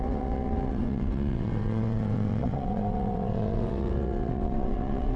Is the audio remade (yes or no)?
yes